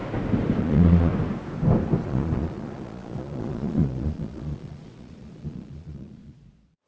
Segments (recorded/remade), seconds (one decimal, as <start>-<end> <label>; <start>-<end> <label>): 0.0-0.6 recorded; 0.6-1.1 remade; 1.1-2.0 recorded; 2.0-6.9 remade

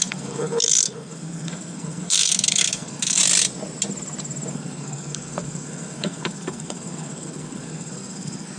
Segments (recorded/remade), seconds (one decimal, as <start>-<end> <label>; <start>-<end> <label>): 0.0-3.2 remade; 3.2-4.5 recorded; 4.5-8.6 remade

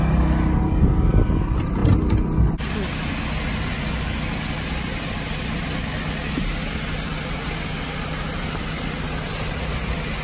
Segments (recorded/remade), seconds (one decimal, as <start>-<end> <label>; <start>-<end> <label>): 0.0-10.2 recorded

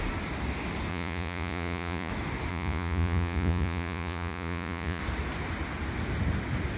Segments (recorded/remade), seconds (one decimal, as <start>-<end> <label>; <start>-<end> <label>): 0.0-0.9 recorded; 0.9-2.1 remade; 2.1-2.5 recorded; 2.5-5.0 remade; 5.0-6.8 recorded

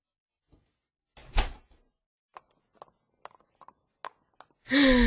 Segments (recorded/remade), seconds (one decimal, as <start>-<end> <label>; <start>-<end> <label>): 0.0-5.1 recorded